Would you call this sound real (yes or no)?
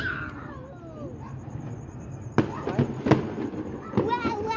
yes